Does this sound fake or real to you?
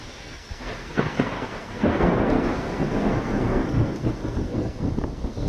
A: fake